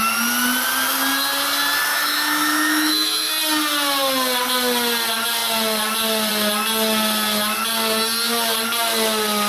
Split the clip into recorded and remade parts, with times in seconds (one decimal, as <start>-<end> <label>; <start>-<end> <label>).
0.0-1.9 recorded; 1.9-3.3 remade; 3.3-9.5 recorded

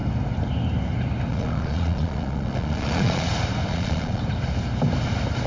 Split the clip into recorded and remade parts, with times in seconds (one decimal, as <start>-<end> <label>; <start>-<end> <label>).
0.0-1.3 recorded; 1.3-3.3 remade; 3.3-3.7 recorded; 3.7-4.2 remade; 4.2-5.5 recorded

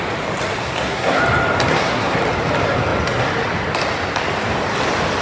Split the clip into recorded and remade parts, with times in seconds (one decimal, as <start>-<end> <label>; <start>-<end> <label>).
0.0-0.6 recorded; 0.6-1.2 remade; 1.2-1.7 recorded; 1.7-2.2 remade; 2.2-5.2 recorded

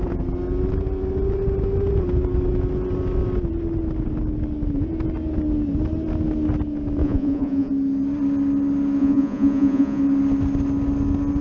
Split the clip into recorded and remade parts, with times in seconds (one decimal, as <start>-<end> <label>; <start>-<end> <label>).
0.0-7.0 recorded; 7.0-7.7 remade; 7.7-9.0 recorded; 9.0-10.0 remade; 10.0-11.4 recorded

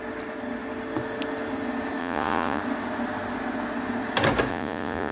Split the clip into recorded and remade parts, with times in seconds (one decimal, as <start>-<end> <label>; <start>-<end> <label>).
0.0-2.0 recorded; 2.0-2.6 remade; 2.6-4.5 recorded; 4.5-5.1 remade

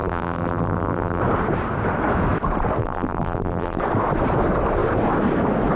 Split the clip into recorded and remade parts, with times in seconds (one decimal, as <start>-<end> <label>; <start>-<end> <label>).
0.0-1.2 remade; 1.2-2.8 recorded; 2.8-3.8 remade; 3.8-5.8 recorded

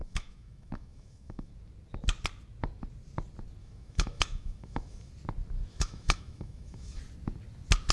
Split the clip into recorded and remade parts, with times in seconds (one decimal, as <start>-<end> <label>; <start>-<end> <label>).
0.0-1.5 remade; 1.5-3.6 recorded; 3.6-5.1 remade; 5.1-5.7 recorded; 5.7-7.0 remade; 7.0-7.9 recorded

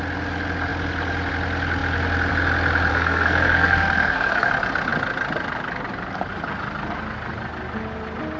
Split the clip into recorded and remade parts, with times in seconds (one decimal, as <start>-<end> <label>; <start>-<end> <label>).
0.0-2.9 recorded; 2.9-4.5 remade; 4.5-8.4 recorded